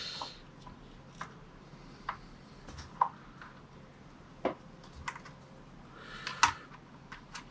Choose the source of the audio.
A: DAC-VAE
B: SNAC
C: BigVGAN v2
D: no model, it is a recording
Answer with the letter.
D